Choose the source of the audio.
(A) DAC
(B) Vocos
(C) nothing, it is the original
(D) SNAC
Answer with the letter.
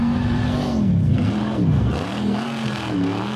D